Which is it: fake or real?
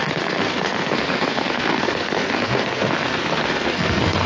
fake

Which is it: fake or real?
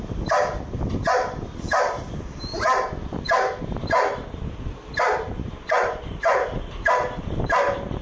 real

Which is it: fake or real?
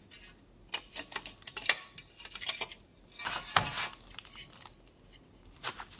real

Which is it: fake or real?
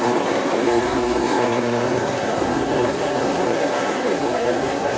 fake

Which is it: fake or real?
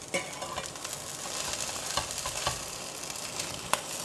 real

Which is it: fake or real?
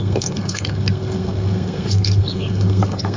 fake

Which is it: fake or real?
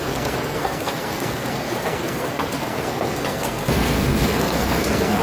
fake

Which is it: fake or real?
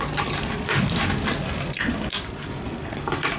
real